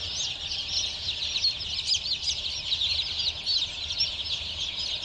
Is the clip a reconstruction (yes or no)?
no